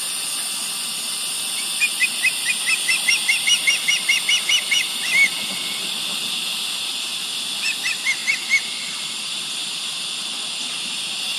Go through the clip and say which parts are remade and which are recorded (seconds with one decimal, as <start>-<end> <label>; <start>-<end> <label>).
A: 0.0-8.2 remade; 8.2-8.9 recorded; 8.9-11.4 remade